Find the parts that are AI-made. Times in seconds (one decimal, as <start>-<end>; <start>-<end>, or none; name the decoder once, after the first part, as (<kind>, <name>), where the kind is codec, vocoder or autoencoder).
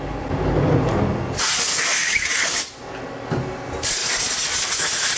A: 2.0-2.6 (codec, DAC)